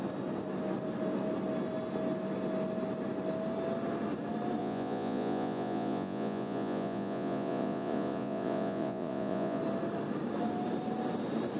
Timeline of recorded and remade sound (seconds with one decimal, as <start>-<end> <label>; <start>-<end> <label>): 0.0-4.6 recorded; 4.6-9.6 remade; 9.6-11.6 recorded